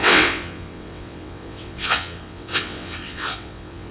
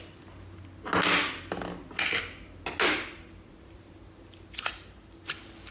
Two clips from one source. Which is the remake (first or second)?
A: first